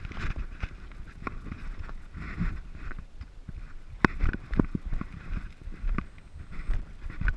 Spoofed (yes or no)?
no